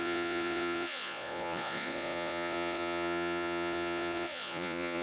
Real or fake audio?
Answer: fake